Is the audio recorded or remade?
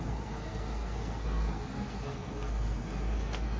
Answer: remade